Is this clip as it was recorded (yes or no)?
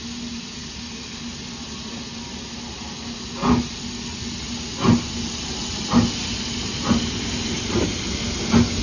yes